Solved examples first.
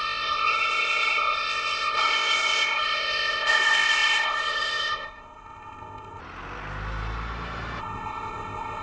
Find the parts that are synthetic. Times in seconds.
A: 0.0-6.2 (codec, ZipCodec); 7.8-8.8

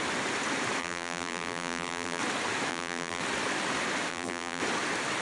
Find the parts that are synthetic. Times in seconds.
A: 0.8-2.2 (vocoder, BigVGAN v2); 2.7-3.2; 4.1-4.6

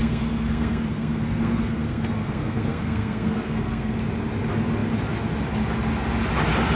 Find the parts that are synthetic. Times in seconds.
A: 0.0-4.0 (codec, SNAC)

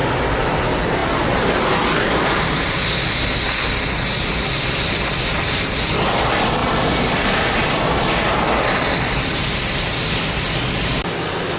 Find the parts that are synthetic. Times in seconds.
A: none

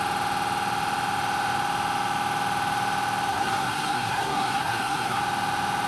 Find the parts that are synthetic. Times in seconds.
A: 3.3-5.2 (codec, SNAC)